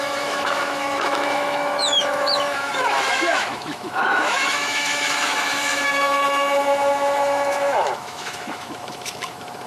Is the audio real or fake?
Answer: fake